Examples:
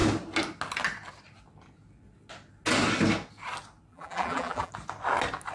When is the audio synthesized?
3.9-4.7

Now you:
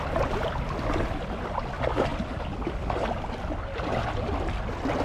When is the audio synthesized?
none

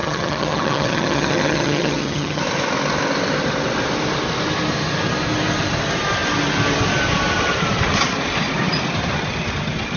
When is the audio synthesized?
0.0-2.4